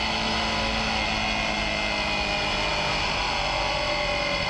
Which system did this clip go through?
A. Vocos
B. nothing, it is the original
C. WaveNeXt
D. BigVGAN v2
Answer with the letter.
B